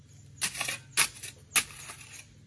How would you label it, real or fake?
real